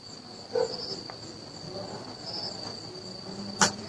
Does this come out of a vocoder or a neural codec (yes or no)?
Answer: no